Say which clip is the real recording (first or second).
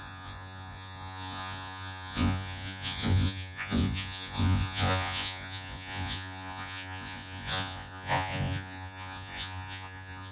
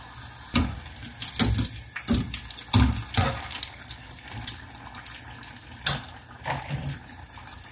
second